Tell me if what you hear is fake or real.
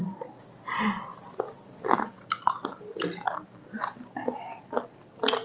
real